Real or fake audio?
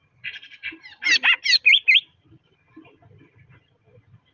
real